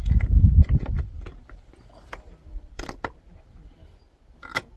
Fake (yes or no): no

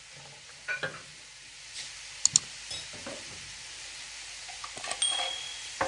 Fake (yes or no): no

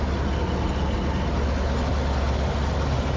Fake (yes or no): no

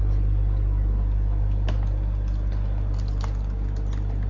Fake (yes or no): no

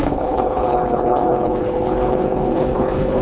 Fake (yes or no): yes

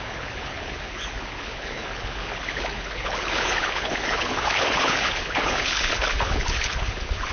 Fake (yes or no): yes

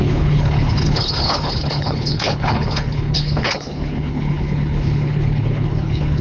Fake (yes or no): yes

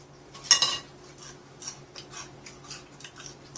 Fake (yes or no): no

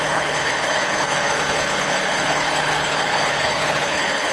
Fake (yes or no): yes